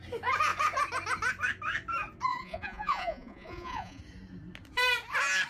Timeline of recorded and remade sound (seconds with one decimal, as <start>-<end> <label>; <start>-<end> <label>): 0.0-2.3 recorded; 2.3-4.0 remade; 4.0-5.5 recorded

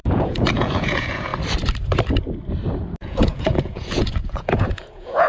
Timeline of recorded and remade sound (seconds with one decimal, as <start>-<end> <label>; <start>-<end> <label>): 0.0-1.3 remade; 1.3-3.0 recorded; 3.0-5.3 remade

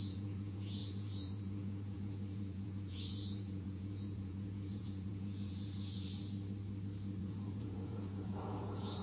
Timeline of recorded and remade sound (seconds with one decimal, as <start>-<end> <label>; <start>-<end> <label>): 0.0-6.2 remade; 6.2-7.2 recorded; 7.2-9.0 remade

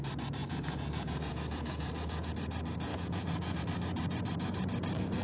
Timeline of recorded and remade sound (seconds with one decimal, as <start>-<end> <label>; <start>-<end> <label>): 0.0-0.4 recorded; 0.4-2.3 remade; 2.3-2.9 recorded; 2.9-3.6 remade; 3.6-5.2 recorded

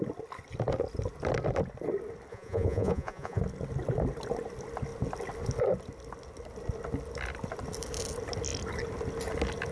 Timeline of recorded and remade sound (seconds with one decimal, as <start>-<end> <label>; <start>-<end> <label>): 0.0-2.3 recorded; 2.3-3.4 remade; 3.4-9.7 recorded

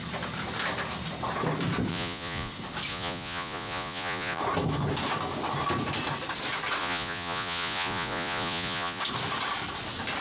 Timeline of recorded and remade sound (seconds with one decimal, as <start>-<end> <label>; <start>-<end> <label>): 0.0-1.9 recorded; 1.9-2.5 remade; 2.5-2.9 recorded; 2.9-4.4 remade; 4.4-6.8 recorded; 6.8-9.0 remade; 9.0-10.2 recorded

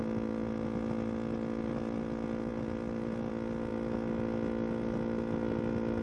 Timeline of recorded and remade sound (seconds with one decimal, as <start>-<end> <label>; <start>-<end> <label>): 0.0-6.0 recorded

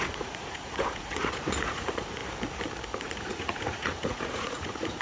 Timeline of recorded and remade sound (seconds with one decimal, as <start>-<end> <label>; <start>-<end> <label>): 0.0-2.2 remade; 2.2-3.0 recorded; 3.0-5.0 remade